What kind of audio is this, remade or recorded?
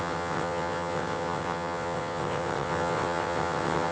remade